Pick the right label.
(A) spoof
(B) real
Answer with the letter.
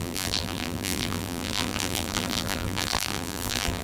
A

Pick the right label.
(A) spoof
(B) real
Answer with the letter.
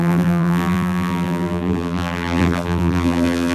A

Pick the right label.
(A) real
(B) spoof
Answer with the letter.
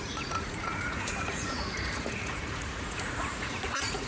B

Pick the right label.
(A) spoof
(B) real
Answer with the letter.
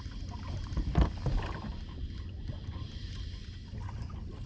B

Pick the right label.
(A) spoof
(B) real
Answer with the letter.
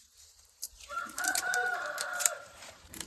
A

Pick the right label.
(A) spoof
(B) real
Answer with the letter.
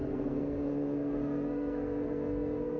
A